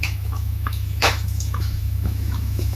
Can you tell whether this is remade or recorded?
remade